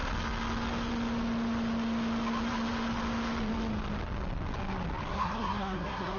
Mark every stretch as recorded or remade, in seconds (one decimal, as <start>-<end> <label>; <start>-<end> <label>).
0.0-5.1 recorded; 5.1-6.2 remade